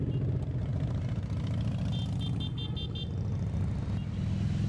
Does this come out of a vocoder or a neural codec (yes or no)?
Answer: no